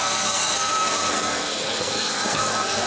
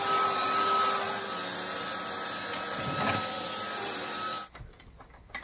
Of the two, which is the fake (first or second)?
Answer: first